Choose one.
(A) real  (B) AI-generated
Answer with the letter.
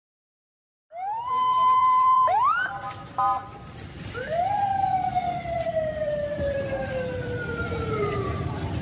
B